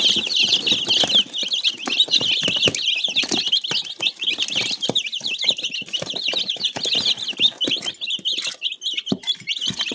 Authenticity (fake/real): real